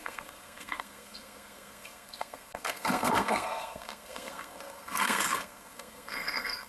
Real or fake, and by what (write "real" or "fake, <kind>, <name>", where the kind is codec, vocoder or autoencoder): fake, codec, SNAC